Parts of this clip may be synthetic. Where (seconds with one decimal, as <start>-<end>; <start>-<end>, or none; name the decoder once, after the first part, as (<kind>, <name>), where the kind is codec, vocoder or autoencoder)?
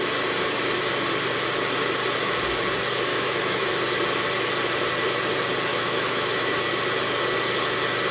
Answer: 3.1-3.7 (autoencoder, DAC-VAE); 5.7-6.7